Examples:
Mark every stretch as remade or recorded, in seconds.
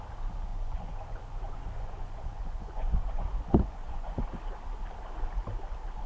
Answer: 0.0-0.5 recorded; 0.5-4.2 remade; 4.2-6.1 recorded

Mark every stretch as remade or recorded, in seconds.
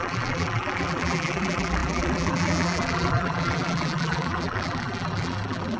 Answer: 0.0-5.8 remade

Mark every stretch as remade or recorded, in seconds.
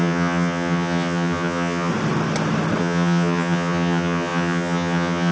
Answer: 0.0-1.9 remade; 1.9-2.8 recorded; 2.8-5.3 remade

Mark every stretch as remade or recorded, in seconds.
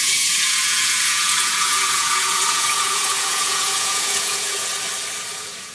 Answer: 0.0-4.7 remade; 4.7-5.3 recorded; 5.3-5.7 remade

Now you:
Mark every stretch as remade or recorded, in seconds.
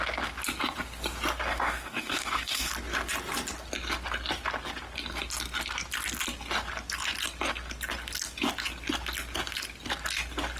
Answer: 0.0-1.5 recorded; 1.5-2.7 remade; 2.7-10.6 recorded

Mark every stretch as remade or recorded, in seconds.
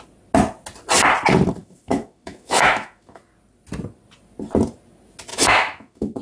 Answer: 0.0-1.6 recorded; 1.6-3.2 remade; 3.2-5.3 recorded; 5.3-6.2 remade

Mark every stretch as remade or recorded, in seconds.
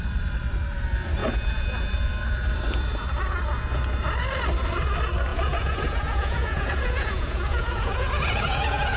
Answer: 0.0-1.2 recorded; 1.2-1.8 remade; 1.8-5.3 recorded; 5.3-9.0 remade